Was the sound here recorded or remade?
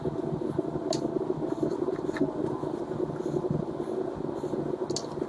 recorded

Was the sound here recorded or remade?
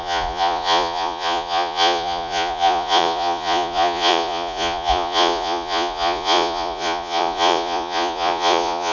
remade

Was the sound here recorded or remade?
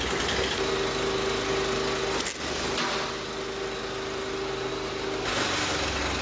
recorded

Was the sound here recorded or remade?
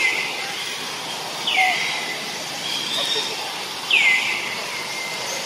recorded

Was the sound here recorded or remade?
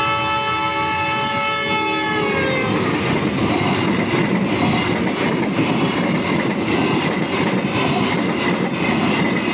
recorded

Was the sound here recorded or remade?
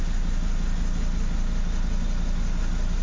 recorded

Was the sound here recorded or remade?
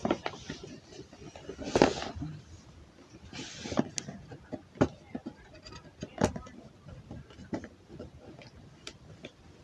recorded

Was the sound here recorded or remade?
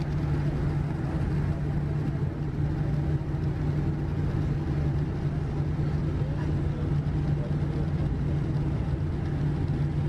recorded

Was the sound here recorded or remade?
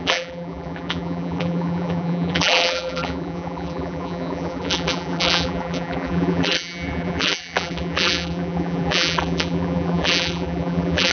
remade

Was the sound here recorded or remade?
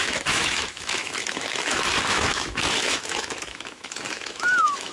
remade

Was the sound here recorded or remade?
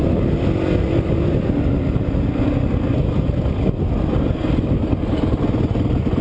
recorded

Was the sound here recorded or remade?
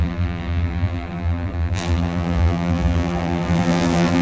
remade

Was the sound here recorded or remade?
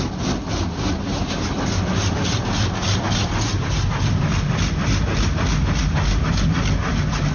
recorded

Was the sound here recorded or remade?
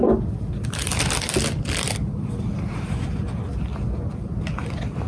recorded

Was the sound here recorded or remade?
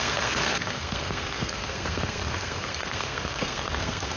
remade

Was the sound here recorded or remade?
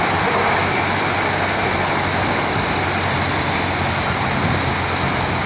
recorded